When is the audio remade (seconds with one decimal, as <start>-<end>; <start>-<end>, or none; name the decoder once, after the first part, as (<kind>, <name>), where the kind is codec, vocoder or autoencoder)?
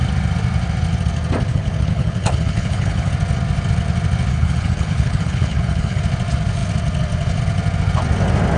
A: 1.5-3.1 (codec, HILCodec); 4.3-6.0